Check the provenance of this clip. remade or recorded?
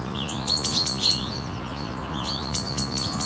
remade